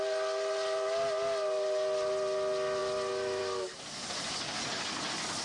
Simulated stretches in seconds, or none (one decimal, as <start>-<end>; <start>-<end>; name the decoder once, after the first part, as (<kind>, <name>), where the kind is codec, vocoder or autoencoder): none